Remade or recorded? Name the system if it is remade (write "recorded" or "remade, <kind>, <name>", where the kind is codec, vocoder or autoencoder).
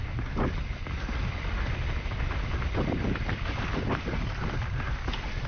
recorded